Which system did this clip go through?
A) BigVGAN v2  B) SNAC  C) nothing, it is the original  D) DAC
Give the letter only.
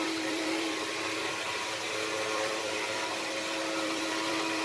A